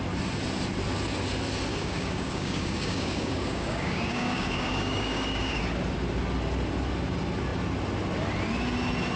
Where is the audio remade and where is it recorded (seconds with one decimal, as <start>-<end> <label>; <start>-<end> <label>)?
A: 0.0-1.7 recorded; 1.7-5.6 remade; 5.6-9.2 recorded